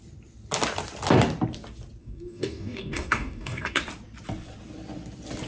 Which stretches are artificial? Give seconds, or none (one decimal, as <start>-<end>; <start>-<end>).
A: 2.0-3.8